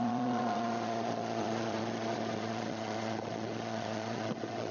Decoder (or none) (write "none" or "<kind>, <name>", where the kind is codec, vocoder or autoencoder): vocoder, Vocos